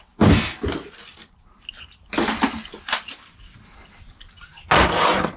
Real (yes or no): yes